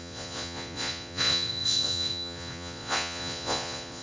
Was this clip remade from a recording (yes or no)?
yes